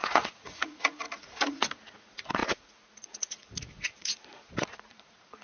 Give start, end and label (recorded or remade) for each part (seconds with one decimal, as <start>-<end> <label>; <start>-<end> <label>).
0.0-5.4 remade

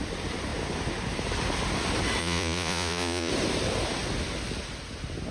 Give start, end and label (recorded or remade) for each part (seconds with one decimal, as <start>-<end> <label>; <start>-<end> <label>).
0.0-2.2 recorded; 2.2-3.3 remade; 3.3-5.3 recorded